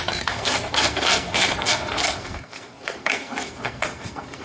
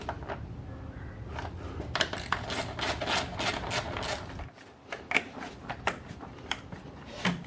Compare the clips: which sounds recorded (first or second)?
second